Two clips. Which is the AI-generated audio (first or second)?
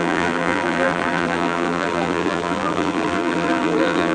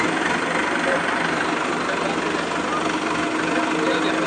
first